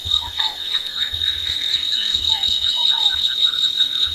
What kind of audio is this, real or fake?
fake